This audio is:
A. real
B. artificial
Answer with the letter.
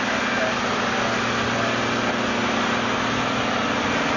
A